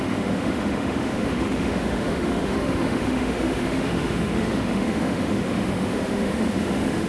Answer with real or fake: fake